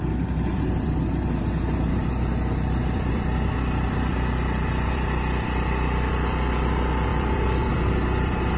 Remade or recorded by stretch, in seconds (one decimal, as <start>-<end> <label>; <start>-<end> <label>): 0.0-8.6 remade